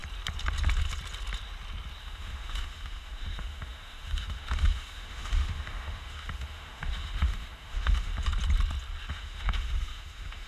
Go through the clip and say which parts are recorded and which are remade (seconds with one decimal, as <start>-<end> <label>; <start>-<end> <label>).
0.0-2.0 recorded; 2.0-8.1 remade; 8.1-9.1 recorded; 9.1-10.5 remade